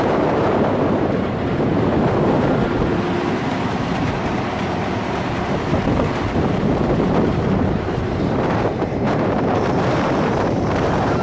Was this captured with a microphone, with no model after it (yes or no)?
no